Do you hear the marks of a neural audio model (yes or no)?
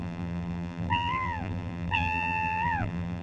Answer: yes